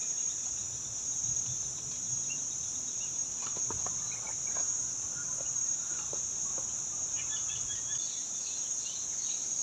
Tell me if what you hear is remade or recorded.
recorded